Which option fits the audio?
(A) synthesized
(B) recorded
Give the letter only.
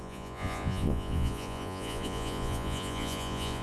A